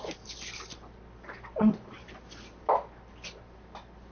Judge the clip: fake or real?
real